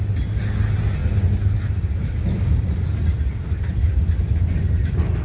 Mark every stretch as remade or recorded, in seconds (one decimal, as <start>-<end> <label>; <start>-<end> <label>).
0.0-5.2 recorded